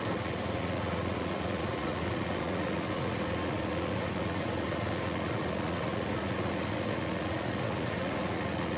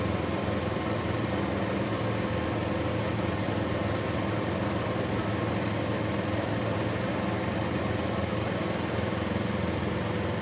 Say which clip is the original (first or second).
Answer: second